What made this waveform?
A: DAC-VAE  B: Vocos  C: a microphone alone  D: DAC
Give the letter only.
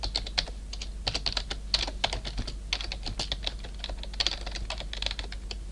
C